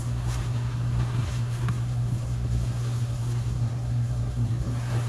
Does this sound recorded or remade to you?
remade